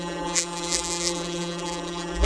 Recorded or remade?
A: remade